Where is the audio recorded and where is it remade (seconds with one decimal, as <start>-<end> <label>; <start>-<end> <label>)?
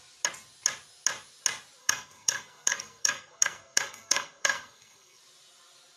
0.0-1.8 recorded; 1.8-5.2 remade; 5.2-6.0 recorded